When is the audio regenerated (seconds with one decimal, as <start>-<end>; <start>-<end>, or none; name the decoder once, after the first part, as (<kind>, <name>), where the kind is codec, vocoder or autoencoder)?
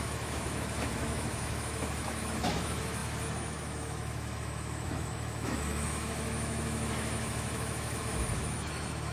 0.0-9.1 (autoencoder, DAC-VAE)